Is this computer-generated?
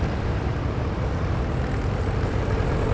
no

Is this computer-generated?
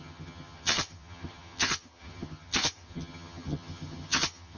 yes